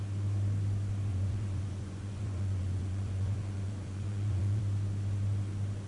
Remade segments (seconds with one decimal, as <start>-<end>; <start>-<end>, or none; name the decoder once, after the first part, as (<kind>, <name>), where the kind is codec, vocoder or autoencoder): 1.1-4.6 (vocoder, Vocos)

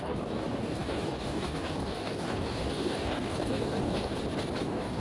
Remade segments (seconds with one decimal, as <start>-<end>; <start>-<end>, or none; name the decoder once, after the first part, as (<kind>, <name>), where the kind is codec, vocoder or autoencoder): 0.0-4.1 (codec, DAC); 4.6-5.0

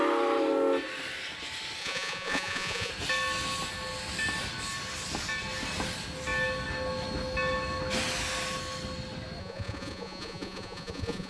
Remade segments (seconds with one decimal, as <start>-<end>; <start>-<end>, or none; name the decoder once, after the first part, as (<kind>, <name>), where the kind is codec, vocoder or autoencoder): 1.8-2.9 (vocoder, Vocos); 9.4-11.3